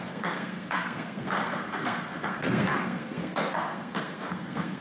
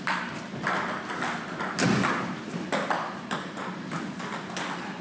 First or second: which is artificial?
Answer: first